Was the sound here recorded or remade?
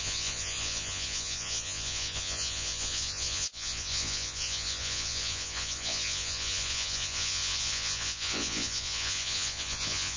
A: remade